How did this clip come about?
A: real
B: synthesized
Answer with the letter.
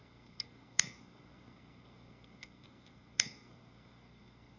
B